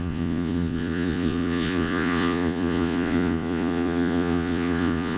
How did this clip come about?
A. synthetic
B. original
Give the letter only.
A